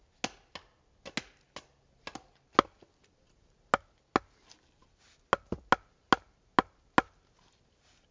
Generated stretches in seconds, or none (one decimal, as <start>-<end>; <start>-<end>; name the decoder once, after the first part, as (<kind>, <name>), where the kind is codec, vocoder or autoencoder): none